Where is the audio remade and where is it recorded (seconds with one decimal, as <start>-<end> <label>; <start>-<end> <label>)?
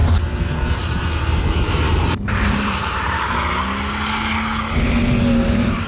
0.0-3.3 remade; 3.3-5.9 recorded